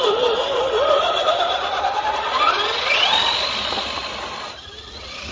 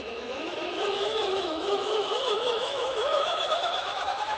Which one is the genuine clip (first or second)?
first